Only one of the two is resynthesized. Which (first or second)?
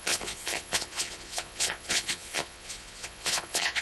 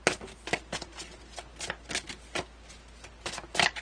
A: first